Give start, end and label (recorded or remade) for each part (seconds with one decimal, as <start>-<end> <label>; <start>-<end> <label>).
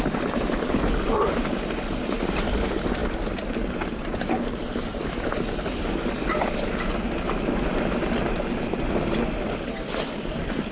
0.0-10.7 recorded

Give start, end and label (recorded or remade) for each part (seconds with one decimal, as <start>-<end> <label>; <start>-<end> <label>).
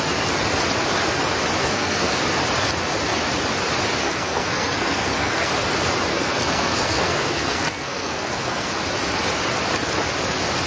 0.0-1.6 recorded; 1.6-2.2 remade; 2.2-4.0 recorded; 4.0-5.5 remade; 5.5-6.1 recorded; 6.1-8.7 remade; 8.7-10.7 recorded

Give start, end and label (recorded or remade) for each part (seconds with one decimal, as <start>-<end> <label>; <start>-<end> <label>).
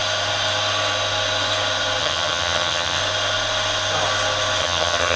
0.0-2.0 recorded; 2.0-3.0 remade; 3.0-4.6 recorded; 4.6-5.2 remade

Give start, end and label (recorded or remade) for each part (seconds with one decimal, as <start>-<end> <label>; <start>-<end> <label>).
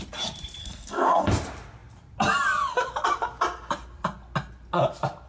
0.0-0.6 recorded; 0.6-1.3 remade; 1.3-5.3 recorded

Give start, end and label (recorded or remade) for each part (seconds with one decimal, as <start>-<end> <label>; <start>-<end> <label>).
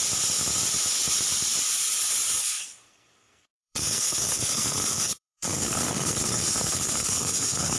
0.0-2.4 recorded; 2.4-7.8 remade